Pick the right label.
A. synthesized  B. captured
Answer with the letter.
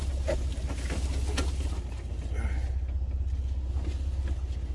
B